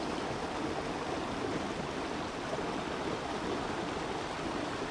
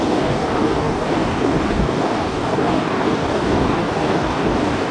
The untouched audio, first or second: first